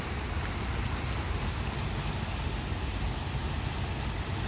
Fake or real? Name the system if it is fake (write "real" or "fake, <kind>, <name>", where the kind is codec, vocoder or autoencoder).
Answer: real